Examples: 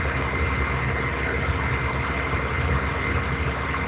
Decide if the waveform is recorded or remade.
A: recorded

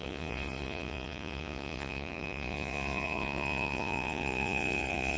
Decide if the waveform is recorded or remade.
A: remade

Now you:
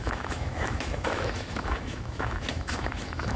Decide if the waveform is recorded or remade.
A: remade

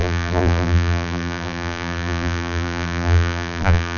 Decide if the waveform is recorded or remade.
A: remade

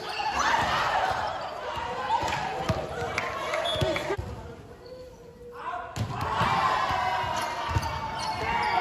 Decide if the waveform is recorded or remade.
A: recorded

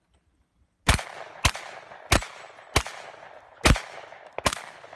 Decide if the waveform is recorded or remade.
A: recorded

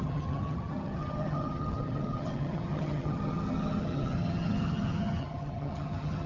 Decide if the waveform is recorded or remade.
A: remade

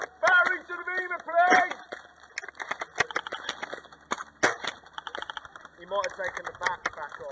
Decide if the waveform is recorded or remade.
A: recorded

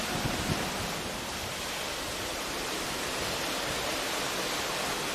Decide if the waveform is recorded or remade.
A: recorded